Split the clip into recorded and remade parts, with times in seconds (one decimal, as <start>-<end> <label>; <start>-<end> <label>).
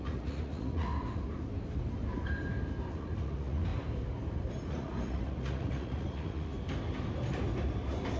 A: 0.0-0.9 remade; 0.9-2.9 recorded; 2.9-3.7 remade; 3.7-4.7 recorded; 4.7-6.5 remade; 6.5-8.2 recorded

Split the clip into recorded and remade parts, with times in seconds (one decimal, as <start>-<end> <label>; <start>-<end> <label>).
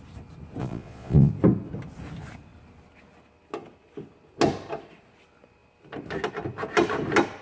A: 0.0-0.6 recorded; 0.6-1.3 remade; 1.3-7.4 recorded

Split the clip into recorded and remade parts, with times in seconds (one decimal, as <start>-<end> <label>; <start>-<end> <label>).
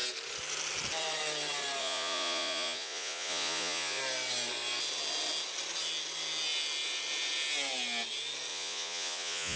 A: 0.0-1.8 recorded; 1.8-4.0 remade; 4.0-8.5 recorded; 8.5-9.6 remade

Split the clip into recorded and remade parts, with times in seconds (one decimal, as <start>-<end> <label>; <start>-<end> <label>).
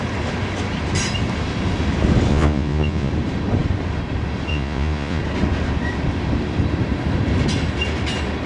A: 0.0-2.3 recorded; 2.3-3.1 remade; 3.1-4.5 recorded; 4.5-5.2 remade; 5.2-8.5 recorded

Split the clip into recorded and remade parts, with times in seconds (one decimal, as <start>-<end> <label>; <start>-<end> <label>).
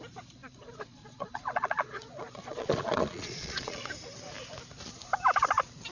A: 0.0-0.4 recorded; 0.4-3.9 remade; 3.9-5.9 recorded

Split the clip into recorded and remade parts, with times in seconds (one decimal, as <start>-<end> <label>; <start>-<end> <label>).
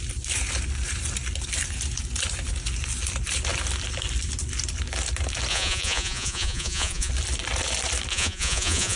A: 0.0-5.5 recorded; 5.5-7.1 remade; 7.1-8.1 recorded; 8.1-9.0 remade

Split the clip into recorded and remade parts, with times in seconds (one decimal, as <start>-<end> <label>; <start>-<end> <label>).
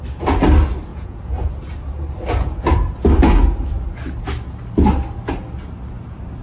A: 0.0-0.9 recorded; 0.9-1.5 remade; 1.5-6.4 recorded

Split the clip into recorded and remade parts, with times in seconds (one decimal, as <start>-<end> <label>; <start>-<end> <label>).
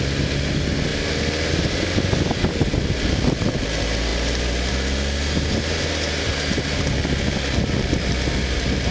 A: 0.0-8.9 recorded